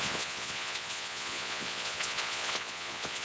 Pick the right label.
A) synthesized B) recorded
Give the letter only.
A